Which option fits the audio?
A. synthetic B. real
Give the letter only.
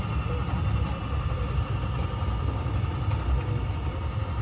B